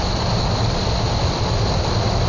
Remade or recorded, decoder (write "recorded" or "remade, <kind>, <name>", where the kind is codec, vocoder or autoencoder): recorded